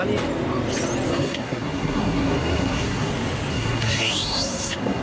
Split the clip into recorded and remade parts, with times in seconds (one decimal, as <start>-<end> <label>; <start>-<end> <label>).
0.0-1.1 recorded; 1.1-3.1 remade; 3.1-3.5 recorded; 3.5-5.0 remade